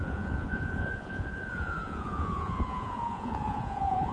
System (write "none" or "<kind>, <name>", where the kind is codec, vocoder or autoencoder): vocoder, Vocos